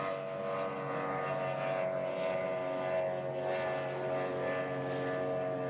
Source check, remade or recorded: recorded